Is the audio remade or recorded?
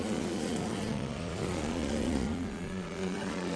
remade